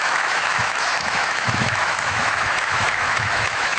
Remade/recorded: remade